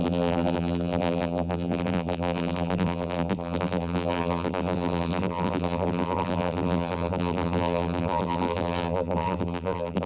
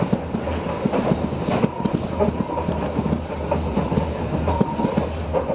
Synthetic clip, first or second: first